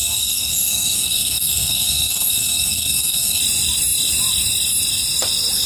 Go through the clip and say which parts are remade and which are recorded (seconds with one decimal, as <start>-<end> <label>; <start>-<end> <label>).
0.0-3.4 remade; 3.4-5.7 recorded